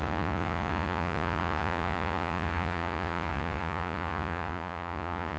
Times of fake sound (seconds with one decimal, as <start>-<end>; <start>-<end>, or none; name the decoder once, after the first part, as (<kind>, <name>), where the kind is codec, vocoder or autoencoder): 0.0-5.4 (vocoder, Vocos)